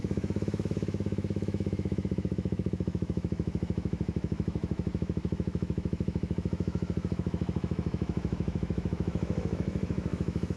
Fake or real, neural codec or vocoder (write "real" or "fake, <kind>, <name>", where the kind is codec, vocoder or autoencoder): fake, autoencoder, DAC-VAE